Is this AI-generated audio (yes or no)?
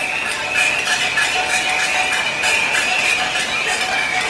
no